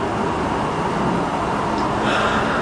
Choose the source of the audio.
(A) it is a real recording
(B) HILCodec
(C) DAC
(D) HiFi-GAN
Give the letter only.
A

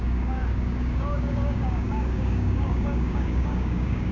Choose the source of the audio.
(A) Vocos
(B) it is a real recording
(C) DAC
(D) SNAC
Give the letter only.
C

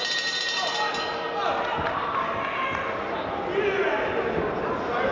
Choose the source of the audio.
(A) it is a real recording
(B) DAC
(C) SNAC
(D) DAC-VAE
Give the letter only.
A